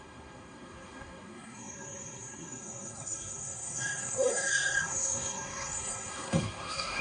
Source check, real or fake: fake